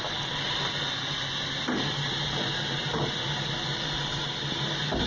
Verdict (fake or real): real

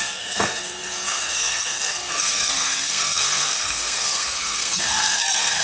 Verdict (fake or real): fake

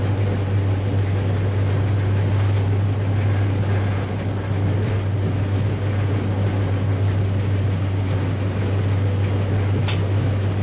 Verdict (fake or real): real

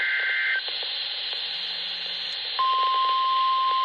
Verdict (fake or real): real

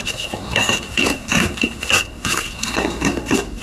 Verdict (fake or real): fake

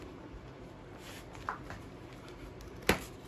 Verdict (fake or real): real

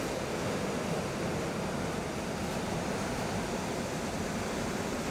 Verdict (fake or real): real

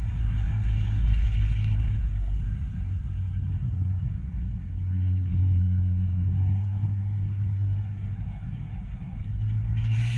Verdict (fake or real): fake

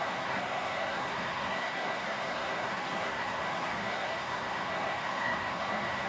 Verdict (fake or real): fake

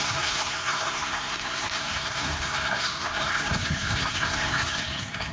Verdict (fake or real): fake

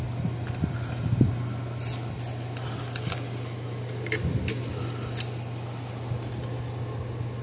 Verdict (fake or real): real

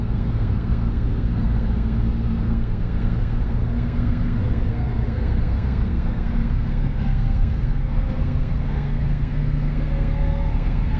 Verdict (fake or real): fake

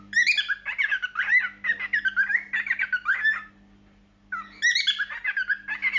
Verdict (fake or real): real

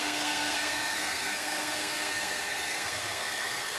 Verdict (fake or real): fake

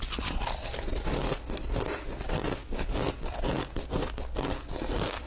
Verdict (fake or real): real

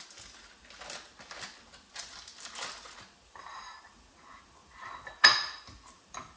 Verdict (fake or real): real